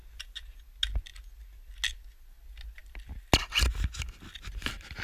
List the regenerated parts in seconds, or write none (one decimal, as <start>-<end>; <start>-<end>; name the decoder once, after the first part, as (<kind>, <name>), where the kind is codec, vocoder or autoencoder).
none